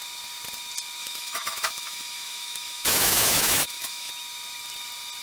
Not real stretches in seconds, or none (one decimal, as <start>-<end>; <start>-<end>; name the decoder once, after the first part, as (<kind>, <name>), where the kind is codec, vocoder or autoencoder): 1.0-4.1 (autoencoder, DAC-VAE)